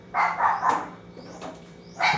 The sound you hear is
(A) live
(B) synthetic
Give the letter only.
B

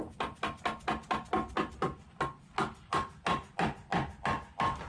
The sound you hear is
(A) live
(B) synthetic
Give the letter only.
A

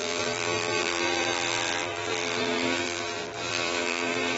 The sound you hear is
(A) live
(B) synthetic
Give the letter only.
B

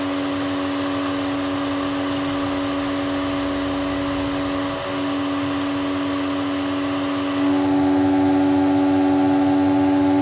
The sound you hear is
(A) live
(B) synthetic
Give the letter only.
A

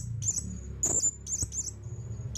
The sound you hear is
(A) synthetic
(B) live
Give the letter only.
B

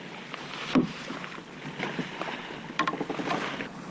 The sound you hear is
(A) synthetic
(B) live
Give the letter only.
B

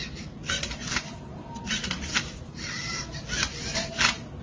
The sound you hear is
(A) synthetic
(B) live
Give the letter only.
A